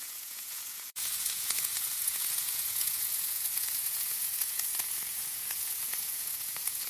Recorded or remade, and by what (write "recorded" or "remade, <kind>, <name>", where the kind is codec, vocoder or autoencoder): remade, vocoder, Vocos